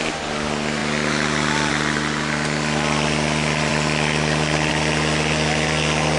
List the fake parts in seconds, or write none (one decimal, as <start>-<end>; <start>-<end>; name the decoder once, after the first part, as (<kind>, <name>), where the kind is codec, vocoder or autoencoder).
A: none